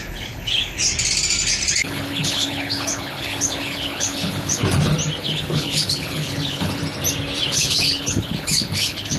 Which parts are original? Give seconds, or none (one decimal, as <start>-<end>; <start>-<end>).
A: 0.8-1.8; 4.6-5.2; 6.8-7.5